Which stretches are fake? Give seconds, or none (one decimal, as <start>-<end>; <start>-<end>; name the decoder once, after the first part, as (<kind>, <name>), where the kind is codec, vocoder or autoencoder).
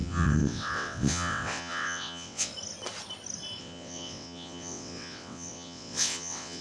0.0-2.5 (vocoder, WaveNeXt); 3.6-6.6